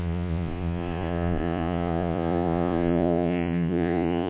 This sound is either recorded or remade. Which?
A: remade